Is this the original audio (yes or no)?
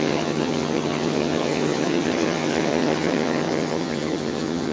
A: no